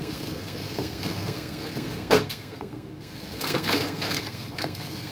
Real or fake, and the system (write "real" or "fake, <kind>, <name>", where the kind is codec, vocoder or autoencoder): fake, codec, SNAC